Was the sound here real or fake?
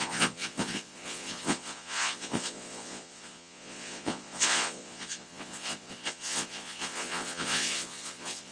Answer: fake